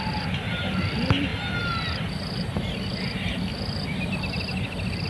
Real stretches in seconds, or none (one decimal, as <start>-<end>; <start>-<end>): 0.0-5.1